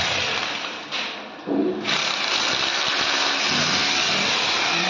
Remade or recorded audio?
recorded